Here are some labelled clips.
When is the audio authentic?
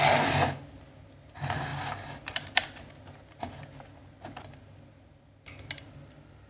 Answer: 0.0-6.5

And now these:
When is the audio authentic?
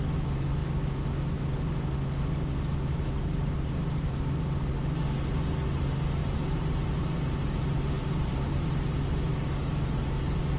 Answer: 0.0-2.9; 4.2-6.2; 10.0-10.6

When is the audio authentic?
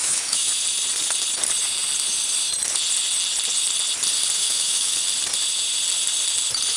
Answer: 0.5-4.4; 5.0-6.8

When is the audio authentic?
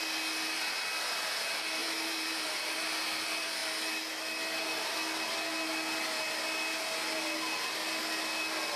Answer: 0.0-1.8; 2.6-8.8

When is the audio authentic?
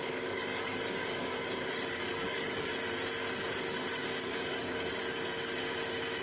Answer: 2.7-3.5; 5.0-6.2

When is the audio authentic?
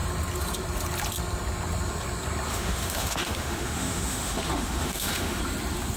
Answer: 0.0-2.5; 5.4-6.0